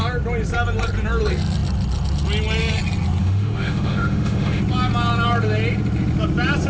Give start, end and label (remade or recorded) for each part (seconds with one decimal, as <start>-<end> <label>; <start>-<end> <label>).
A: 0.0-3.2 recorded; 3.2-4.6 remade; 4.6-6.7 recorded